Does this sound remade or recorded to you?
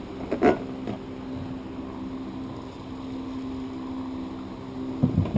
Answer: recorded